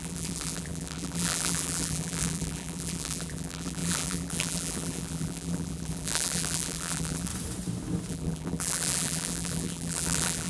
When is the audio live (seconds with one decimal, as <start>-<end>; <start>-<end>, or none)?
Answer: 7.3-8.1